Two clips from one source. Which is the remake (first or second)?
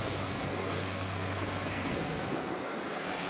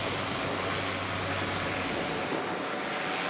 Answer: first